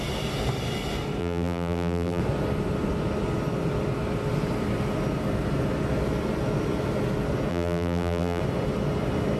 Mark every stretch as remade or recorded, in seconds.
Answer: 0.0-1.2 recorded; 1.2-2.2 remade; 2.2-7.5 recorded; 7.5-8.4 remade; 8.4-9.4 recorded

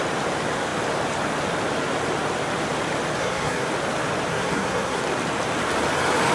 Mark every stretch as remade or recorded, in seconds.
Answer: 0.0-3.2 recorded; 3.2-3.7 remade; 3.7-4.3 recorded; 4.3-5.0 remade; 5.0-6.3 recorded

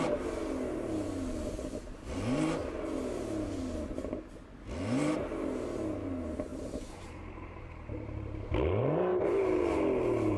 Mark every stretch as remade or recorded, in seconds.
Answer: 0.0-6.5 recorded; 6.5-7.6 remade; 7.6-9.1 recorded; 9.1-9.6 remade; 9.6-10.4 recorded

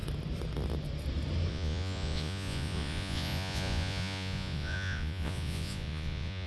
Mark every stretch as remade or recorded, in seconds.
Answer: 0.0-1.5 recorded; 1.5-6.5 remade

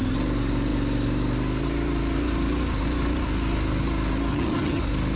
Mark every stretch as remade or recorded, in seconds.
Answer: 0.0-4.3 recorded; 4.3-4.8 remade; 4.8-5.2 recorded

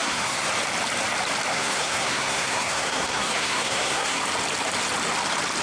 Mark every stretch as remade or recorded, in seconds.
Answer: 0.0-0.5 remade; 0.5-1.5 recorded; 1.5-4.2 remade; 4.2-5.6 recorded